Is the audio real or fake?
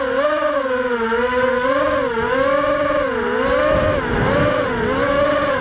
real